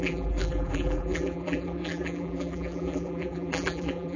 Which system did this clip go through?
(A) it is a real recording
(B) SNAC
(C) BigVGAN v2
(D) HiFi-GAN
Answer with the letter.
C